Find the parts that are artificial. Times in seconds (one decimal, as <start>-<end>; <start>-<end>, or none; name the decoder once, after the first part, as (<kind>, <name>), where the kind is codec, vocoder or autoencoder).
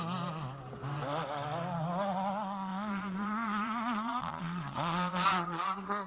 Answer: 2.7-6.1 (vocoder, Vocos)